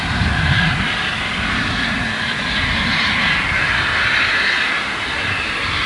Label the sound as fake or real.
real